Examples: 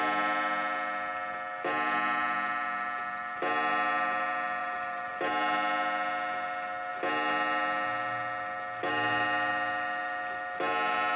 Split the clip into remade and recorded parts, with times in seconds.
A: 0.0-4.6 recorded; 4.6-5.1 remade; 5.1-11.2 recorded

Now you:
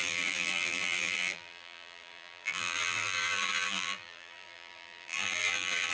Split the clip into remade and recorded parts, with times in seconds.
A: 0.0-5.9 remade